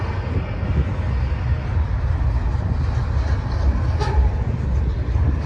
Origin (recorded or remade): recorded